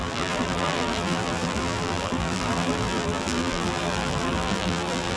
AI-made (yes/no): yes